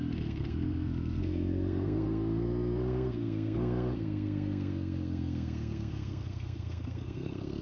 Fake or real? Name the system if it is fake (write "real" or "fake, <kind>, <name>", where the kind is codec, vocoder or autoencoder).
fake, codec, SNAC